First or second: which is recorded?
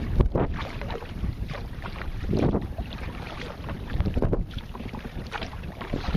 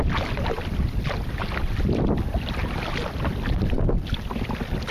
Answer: second